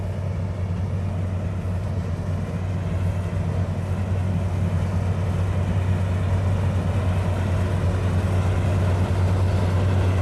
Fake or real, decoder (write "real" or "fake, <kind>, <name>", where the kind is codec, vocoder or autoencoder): real